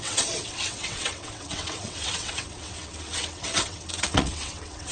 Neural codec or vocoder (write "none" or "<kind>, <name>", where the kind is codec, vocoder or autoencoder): vocoder, WaveNeXt